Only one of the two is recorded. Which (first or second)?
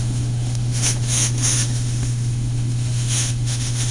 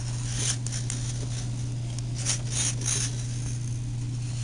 second